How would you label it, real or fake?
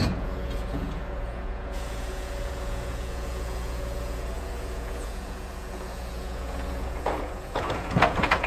fake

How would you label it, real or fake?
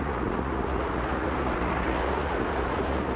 fake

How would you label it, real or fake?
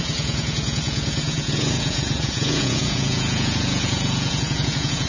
fake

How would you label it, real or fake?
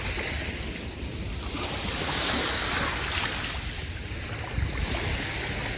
real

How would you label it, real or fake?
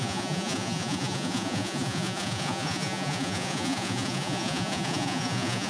fake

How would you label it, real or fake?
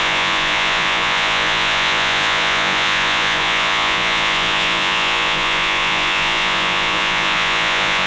fake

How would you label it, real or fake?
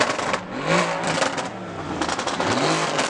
real